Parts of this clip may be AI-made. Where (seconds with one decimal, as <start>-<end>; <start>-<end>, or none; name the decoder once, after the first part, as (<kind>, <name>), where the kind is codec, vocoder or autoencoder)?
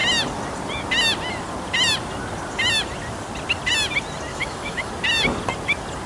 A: 4.3-4.9 (autoencoder, DAC-VAE)